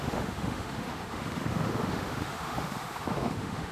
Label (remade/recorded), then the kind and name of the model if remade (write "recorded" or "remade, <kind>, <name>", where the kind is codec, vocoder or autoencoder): remade, autoencoder, DAC-VAE